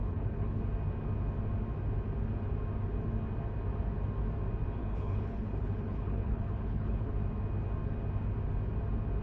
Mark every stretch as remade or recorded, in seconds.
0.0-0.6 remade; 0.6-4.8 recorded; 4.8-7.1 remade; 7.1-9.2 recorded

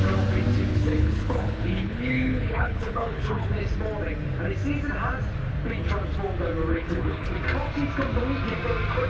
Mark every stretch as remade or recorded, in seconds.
0.0-0.7 recorded; 0.7-3.5 remade; 3.5-6.7 recorded; 6.7-7.3 remade; 7.3-9.1 recorded

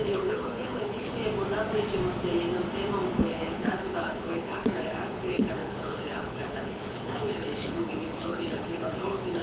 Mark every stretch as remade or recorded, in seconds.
0.0-1.2 remade; 1.2-3.2 recorded; 3.2-9.4 remade

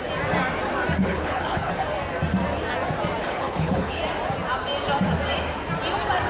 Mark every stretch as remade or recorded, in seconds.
0.0-1.0 recorded; 1.0-1.7 remade; 1.7-3.2 recorded; 3.2-4.0 remade; 4.0-6.3 recorded

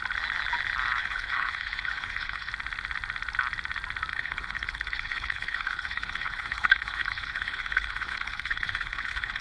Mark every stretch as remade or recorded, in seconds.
0.0-1.0 recorded; 1.0-2.5 remade; 2.5-4.1 recorded; 4.1-9.4 remade

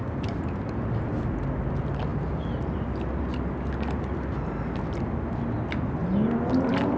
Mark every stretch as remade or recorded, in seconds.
0.0-7.0 recorded